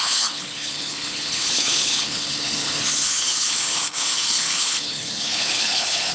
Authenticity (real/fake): fake